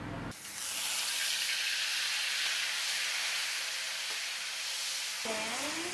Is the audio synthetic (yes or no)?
no